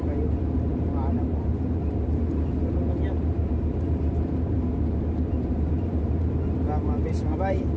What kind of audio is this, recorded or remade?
remade